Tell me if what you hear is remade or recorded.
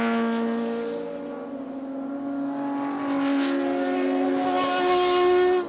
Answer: recorded